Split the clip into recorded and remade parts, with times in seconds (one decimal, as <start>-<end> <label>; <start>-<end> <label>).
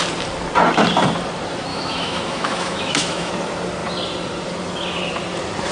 0.0-1.7 recorded; 1.7-3.3 remade; 3.3-5.7 recorded